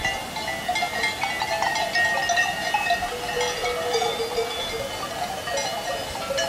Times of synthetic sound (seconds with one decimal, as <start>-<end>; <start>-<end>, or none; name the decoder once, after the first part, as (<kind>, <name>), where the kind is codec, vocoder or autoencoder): none